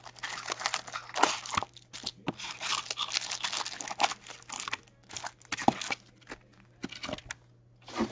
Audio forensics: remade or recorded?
recorded